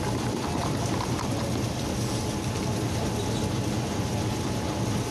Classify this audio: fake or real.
real